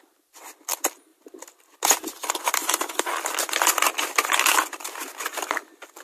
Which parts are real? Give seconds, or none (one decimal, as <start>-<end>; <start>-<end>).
0.0-6.0